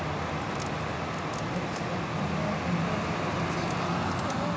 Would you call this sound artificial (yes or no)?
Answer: no